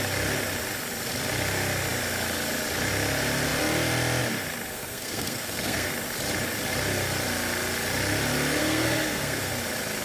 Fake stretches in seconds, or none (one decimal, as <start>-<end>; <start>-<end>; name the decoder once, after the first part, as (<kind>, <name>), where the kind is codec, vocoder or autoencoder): 4.7-5.9 (codec, SNAC); 8.6-9.5